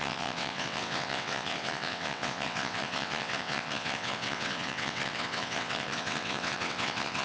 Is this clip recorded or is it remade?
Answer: remade